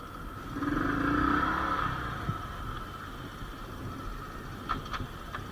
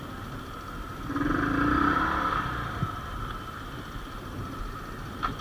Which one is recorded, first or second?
first